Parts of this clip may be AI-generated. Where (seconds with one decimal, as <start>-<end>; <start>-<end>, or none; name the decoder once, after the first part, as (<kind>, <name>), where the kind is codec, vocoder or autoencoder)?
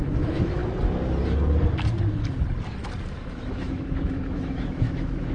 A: 0.0-0.6 (autoencoder, DAC-VAE); 3.2-5.3